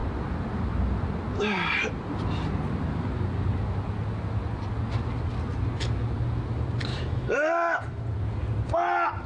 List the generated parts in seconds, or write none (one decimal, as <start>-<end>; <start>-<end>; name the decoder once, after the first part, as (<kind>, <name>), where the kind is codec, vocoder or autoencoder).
6.9-8.0 (autoencoder, DAC-VAE)